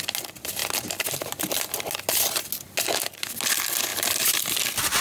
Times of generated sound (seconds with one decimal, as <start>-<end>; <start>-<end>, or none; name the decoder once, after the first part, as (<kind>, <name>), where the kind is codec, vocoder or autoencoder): none